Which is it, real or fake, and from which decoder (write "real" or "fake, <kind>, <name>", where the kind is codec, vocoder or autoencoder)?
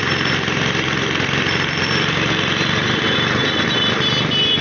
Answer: real